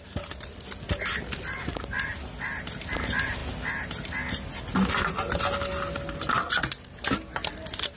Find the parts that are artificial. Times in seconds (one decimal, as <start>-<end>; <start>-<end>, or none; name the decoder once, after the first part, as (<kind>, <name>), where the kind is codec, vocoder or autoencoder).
none

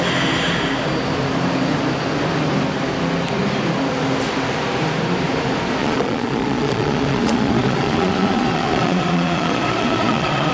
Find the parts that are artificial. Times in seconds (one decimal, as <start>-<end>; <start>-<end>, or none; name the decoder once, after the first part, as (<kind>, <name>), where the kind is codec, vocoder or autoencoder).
5.8-10.5 (vocoder, Vocos)

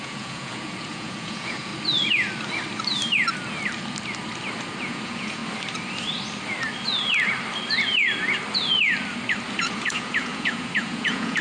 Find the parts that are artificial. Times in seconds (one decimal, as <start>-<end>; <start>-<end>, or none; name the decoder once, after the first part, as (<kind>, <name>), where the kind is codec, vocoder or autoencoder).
0.0-1.7 (vocoder, Vocos); 4.8-5.4; 9.6-11.4

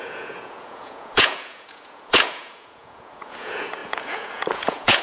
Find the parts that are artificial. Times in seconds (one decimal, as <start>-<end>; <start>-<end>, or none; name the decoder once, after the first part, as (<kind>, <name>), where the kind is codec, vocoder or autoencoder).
0.0-5.0 (vocoder, Vocos)